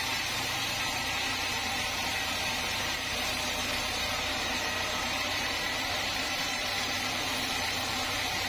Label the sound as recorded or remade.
remade